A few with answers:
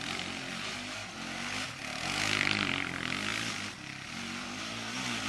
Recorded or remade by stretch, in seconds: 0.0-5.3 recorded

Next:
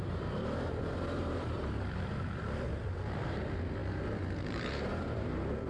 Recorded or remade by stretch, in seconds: 0.0-5.7 remade

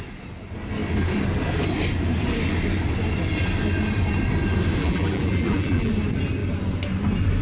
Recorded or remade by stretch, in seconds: 0.0-4.8 recorded; 4.8-5.9 remade; 5.9-7.4 recorded

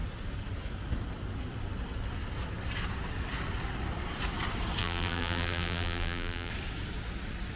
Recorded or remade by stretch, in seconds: 0.0-4.8 recorded; 4.8-6.5 remade; 6.5-7.6 recorded

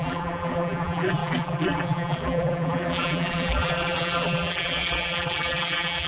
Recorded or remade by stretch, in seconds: 0.0-6.1 remade

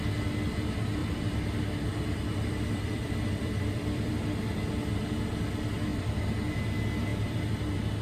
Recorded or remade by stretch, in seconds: 0.0-1.0 recorded; 1.0-4.1 remade; 4.1-5.9 recorded; 5.9-6.5 remade; 6.5-7.1 recorded; 7.1-8.0 remade

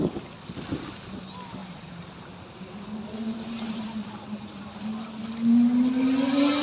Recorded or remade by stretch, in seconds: 0.0-1.6 recorded; 1.6-5.2 remade; 5.2-6.6 recorded

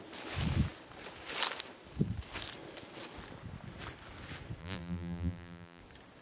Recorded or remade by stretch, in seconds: 0.0-4.6 recorded; 4.6-5.8 remade; 5.8-6.2 recorded